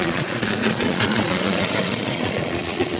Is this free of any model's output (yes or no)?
no